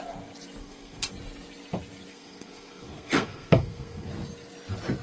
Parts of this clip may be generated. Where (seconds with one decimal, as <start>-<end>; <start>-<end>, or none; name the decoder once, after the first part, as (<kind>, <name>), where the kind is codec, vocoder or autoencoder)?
0.6-1.1 (codec, SNAC); 2.1-4.1